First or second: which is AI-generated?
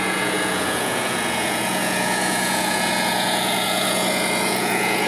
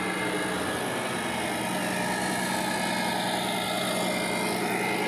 first